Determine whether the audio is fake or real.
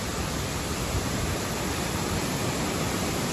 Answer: fake